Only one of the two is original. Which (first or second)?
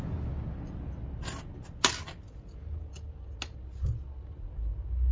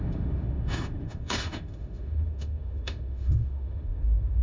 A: first